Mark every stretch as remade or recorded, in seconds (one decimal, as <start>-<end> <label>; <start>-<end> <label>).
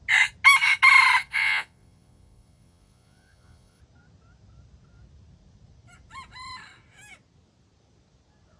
0.0-1.2 recorded; 1.2-3.8 remade; 3.8-8.6 recorded